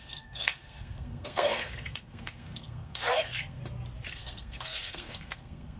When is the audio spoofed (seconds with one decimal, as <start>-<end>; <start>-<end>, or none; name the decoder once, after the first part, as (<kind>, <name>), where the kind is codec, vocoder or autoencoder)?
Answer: 0.0-3.6 (codec, SNAC); 4.1-5.8